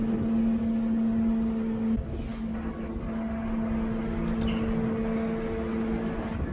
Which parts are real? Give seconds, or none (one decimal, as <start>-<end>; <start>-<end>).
0.0-6.5